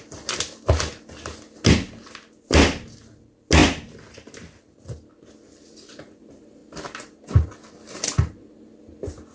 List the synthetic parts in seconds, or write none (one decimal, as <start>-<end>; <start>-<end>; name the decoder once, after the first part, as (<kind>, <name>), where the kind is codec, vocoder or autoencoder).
3.6-4.6 (vocoder, BigVGAN v2)